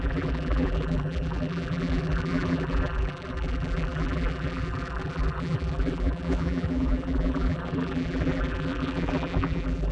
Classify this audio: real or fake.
fake